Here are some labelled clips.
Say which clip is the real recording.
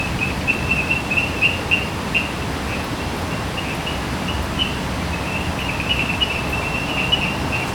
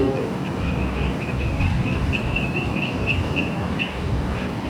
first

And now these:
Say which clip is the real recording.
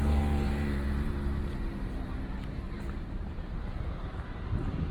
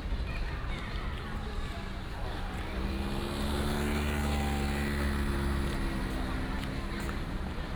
second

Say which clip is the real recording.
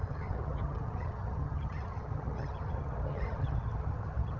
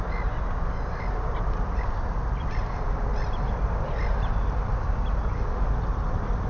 second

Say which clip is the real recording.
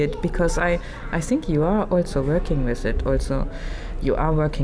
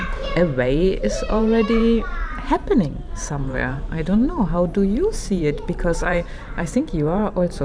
first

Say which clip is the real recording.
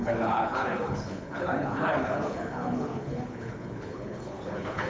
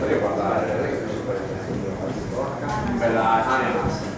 second